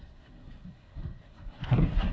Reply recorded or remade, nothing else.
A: remade